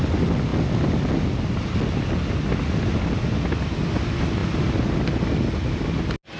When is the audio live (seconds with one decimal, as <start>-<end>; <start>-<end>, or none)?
0.0-6.4